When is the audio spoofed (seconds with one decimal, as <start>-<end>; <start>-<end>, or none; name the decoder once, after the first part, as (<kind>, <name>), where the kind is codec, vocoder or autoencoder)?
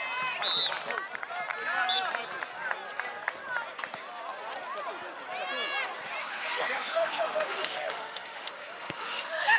6.2-9.6 (autoencoder, DAC-VAE)